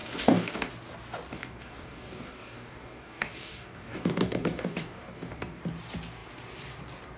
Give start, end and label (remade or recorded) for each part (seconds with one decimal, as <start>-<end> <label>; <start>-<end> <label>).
0.0-0.7 remade; 0.7-1.3 recorded; 1.3-5.6 remade; 5.6-7.2 recorded